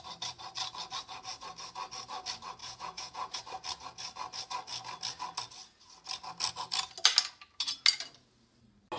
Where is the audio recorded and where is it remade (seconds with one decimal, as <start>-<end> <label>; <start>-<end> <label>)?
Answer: 0.0-2.6 recorded; 2.6-3.4 remade; 3.4-9.0 recorded